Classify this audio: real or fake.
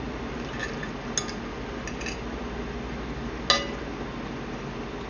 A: real